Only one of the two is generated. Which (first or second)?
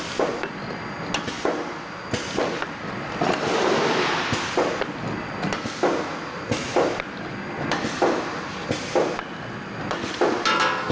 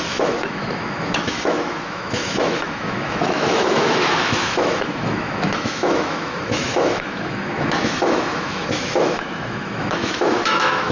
second